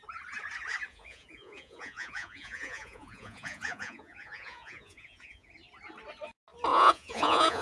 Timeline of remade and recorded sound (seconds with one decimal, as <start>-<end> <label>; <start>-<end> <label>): 0.0-0.9 recorded; 0.9-5.5 remade; 5.5-6.7 recorded; 6.7-7.6 remade